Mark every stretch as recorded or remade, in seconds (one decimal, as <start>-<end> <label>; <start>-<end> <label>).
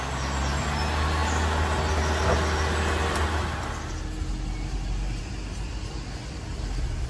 0.0-7.1 recorded